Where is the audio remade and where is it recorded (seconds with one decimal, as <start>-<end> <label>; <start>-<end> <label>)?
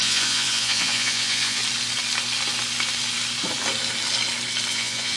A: 0.0-1.6 remade; 1.6-4.7 recorded; 4.7-5.2 remade